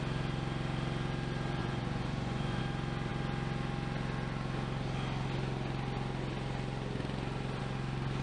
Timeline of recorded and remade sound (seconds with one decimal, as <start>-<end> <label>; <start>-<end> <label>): 0.0-1.6 recorded; 1.6-2.6 remade; 2.6-8.2 recorded